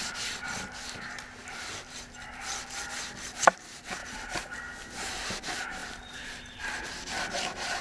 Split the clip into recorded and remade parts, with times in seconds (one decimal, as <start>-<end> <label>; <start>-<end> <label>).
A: 0.0-1.4 recorded; 1.4-2.5 remade; 2.5-5.8 recorded; 5.8-6.7 remade; 6.7-7.8 recorded